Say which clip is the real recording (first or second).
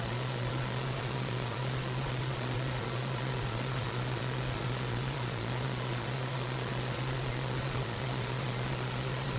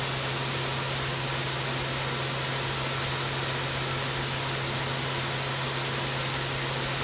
second